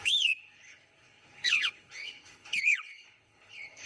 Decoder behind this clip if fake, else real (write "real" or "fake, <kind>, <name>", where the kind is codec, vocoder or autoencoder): fake, codec, HILCodec